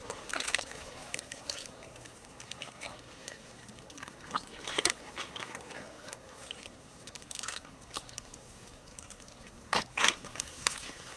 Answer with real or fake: fake